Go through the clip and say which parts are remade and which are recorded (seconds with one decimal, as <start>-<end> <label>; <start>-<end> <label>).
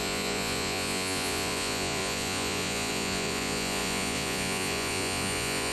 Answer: 0.0-5.7 remade